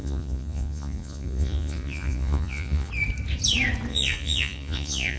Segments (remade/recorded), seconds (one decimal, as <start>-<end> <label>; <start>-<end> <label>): 0.0-2.9 remade; 2.9-3.9 recorded; 3.9-5.2 remade